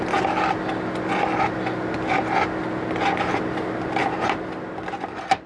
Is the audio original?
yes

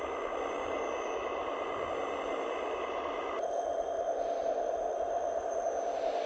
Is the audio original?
yes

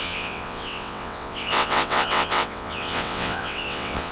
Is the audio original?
no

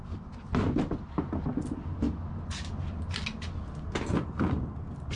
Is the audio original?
yes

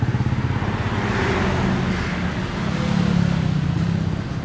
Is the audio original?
yes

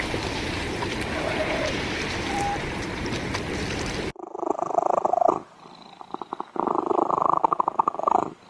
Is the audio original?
yes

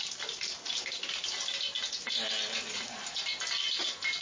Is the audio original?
yes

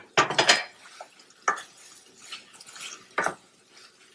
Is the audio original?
yes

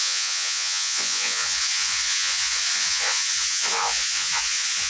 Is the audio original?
no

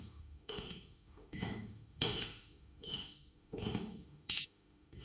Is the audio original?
no